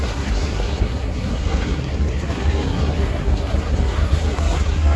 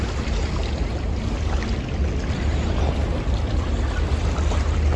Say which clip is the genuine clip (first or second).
second